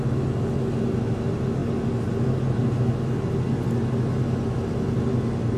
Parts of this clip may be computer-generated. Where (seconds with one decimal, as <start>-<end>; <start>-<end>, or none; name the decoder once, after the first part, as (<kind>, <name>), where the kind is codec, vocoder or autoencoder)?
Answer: none